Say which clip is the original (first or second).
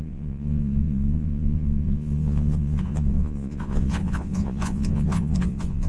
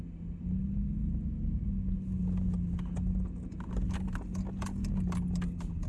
second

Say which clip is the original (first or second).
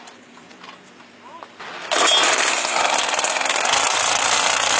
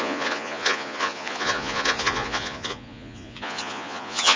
first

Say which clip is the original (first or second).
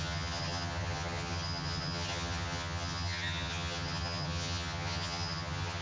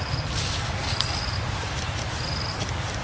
second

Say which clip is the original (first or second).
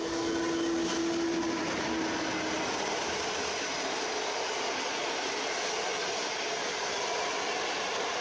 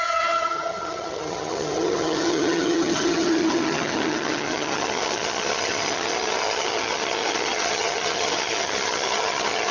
first